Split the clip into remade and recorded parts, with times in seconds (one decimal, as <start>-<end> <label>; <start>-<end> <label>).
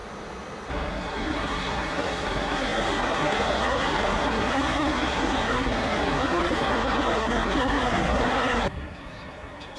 0.0-0.7 recorded; 0.7-9.8 remade